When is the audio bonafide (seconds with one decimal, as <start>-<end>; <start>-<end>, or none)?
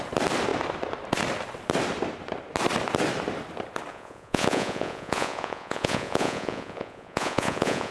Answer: 0.0-3.9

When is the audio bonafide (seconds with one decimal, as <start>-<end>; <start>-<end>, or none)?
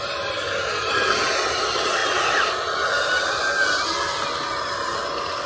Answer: 0.0-5.5